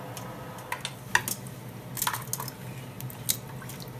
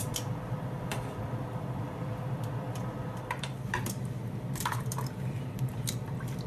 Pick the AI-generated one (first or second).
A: second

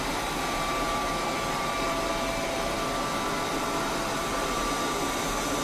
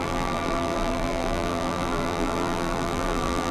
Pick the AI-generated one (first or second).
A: second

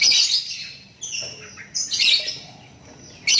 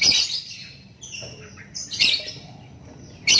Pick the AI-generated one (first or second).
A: second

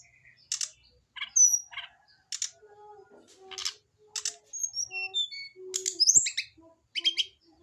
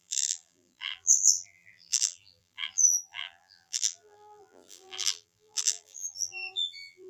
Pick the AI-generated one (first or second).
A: second